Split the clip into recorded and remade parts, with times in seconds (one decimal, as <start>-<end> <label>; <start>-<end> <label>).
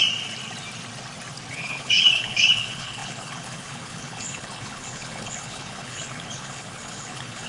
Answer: 0.0-1.5 recorded; 1.5-7.5 remade